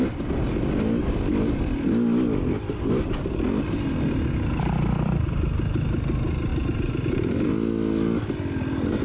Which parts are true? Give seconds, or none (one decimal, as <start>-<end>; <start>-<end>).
0.0-6.5; 7.5-9.0